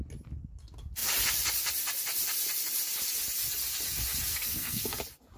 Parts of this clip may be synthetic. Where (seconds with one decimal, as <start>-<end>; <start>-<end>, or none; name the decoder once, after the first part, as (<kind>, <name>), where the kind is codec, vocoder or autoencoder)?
4.3-5.0 (codec, SNAC)